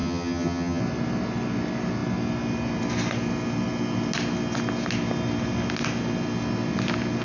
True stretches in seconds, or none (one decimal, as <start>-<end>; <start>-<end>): 0.8-7.2